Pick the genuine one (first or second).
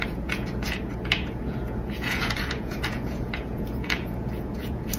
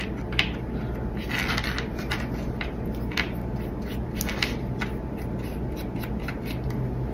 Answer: second